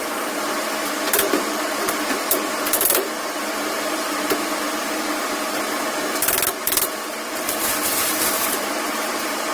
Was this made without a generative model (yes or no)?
no